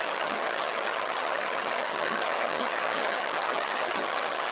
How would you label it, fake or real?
fake